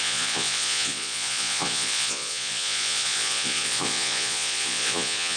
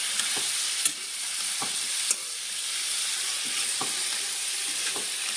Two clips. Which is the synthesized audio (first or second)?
first